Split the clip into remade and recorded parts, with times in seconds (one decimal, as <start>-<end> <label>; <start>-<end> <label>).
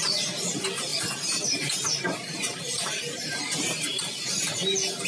0.0-0.9 recorded; 0.9-4.0 remade; 4.0-5.1 recorded